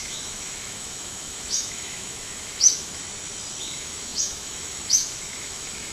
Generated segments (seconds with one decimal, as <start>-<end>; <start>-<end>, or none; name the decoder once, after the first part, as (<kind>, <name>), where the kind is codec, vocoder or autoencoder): 0.0-3.0 (autoencoder, DAC-VAE); 3.6-5.9

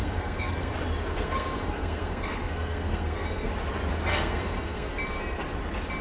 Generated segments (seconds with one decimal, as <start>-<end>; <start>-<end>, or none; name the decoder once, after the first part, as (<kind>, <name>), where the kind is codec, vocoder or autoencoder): 0.0-0.7 (codec, SNAC); 1.1-3.5; 4.1-4.9

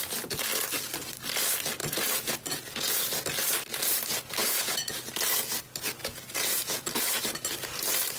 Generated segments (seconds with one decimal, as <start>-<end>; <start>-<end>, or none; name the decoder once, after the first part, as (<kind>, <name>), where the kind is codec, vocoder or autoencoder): 1.8-3.1 (vocoder, Vocos); 4.4-4.9; 6.0-7.2

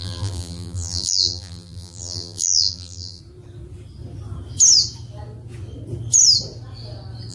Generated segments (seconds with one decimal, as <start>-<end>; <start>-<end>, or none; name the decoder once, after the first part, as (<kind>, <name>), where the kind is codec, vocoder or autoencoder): 0.0-3.2 (vocoder, BigVGAN v2)

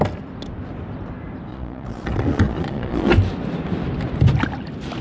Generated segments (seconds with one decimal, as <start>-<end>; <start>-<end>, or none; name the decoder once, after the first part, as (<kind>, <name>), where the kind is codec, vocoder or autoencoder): 1.5-3.1 (vocoder, Vocos)

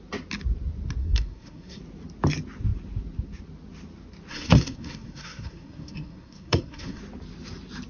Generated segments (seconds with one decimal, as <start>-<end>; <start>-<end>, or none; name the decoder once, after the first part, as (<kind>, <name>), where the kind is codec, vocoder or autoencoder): 1.0-1.8 (codec, SNAC); 4.3-7.0

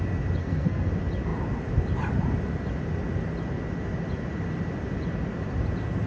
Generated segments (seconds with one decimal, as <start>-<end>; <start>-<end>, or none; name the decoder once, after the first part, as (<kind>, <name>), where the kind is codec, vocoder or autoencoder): 0.4-0.9 (codec, SNAC)